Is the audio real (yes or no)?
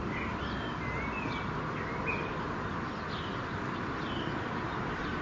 yes